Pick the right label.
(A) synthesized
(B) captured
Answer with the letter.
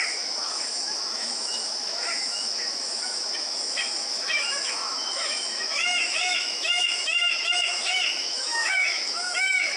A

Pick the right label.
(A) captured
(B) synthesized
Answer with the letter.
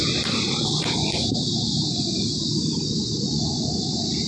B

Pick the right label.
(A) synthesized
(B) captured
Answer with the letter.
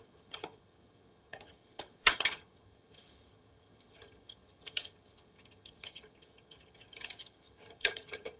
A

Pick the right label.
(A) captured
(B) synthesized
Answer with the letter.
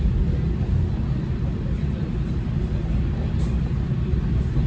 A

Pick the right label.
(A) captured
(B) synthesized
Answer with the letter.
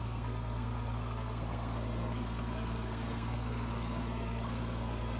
B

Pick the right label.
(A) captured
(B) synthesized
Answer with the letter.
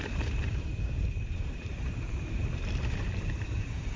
B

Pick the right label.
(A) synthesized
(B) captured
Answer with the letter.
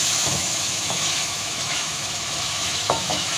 A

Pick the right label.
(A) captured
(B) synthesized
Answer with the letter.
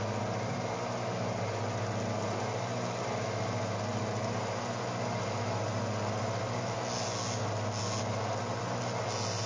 A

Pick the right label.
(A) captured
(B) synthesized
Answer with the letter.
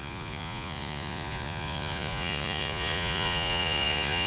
B